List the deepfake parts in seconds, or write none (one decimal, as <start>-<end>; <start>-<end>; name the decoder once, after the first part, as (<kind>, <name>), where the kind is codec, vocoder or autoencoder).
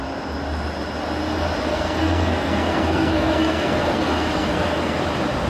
1.7-5.0 (codec, SNAC)